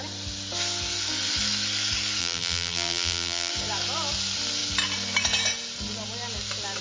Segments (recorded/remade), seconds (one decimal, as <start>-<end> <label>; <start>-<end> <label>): 0.0-2.2 recorded; 2.2-3.5 remade; 3.5-6.8 recorded